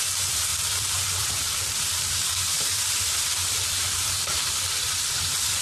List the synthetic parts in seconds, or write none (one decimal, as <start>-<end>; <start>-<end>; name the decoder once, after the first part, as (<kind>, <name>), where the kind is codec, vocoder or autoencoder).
0.0-5.6 (vocoder, BigVGAN v2)